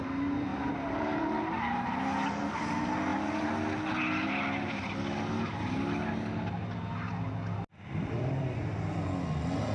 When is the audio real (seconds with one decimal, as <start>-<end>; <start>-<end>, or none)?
0.0-0.5; 1.2-7.7; 9.0-9.7